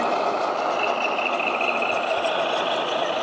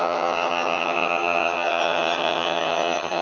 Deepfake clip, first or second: second